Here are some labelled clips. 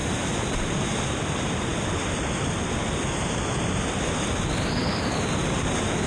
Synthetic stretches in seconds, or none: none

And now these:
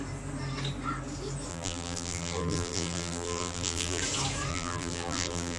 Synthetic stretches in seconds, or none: 1.5-4.0 (vocoder, BigVGAN v2); 4.5-5.6

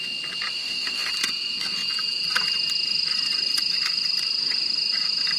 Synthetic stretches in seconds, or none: 0.6-1.1 (autoencoder, DAC-VAE)